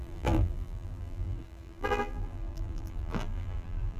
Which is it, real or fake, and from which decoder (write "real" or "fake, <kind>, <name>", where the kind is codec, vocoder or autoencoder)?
fake, vocoder, BigVGAN v2